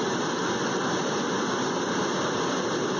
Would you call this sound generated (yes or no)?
no